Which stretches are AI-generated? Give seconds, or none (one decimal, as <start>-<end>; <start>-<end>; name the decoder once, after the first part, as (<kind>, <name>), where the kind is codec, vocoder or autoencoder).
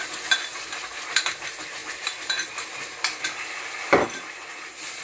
0.5-1.2 (vocoder, BigVGAN v2); 1.8-5.0